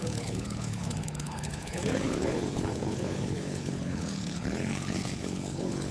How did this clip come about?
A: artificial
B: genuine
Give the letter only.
A